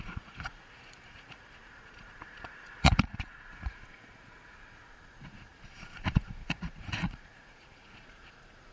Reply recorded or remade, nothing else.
remade